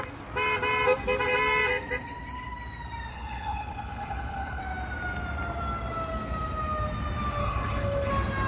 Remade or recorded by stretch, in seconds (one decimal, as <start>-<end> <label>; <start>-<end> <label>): 0.0-3.1 recorded; 3.1-4.6 remade; 4.6-7.4 recorded; 7.4-8.1 remade; 8.1-8.5 recorded